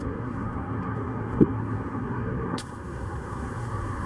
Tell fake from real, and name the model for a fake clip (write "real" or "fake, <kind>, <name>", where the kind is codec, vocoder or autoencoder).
fake, codec, SNAC